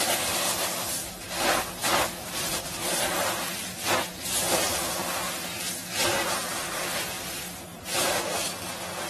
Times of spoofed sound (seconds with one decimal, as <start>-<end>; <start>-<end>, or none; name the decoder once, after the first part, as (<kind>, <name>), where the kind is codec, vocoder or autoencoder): 1.8-2.6 (vocoder, BigVGAN v2); 7.7-8.4